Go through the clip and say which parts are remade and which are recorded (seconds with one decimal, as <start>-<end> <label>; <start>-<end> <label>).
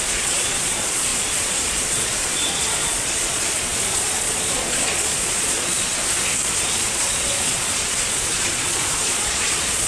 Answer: 0.0-6.0 remade; 6.0-6.8 recorded; 6.8-9.9 remade